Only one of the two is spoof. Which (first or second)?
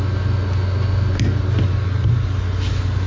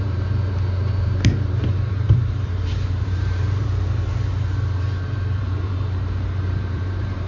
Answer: second